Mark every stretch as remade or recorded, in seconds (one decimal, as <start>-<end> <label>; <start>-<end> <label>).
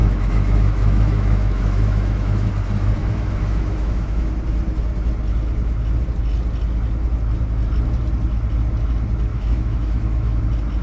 0.0-2.5 remade; 2.5-3.0 recorded; 3.0-4.3 remade; 4.3-9.3 recorded; 9.3-10.4 remade; 10.4-10.8 recorded